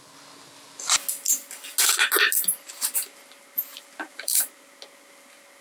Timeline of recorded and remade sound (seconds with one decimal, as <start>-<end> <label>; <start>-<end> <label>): 0.0-3.7 recorded; 3.7-4.7 remade; 4.7-5.6 recorded